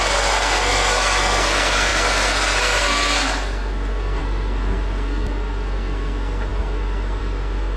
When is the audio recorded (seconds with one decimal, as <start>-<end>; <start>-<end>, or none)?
none